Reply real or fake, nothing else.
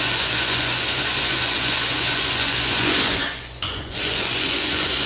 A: fake